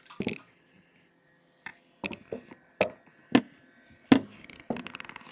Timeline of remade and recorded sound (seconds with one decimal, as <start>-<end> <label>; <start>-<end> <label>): 0.0-5.3 recorded